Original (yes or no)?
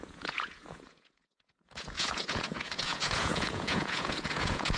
no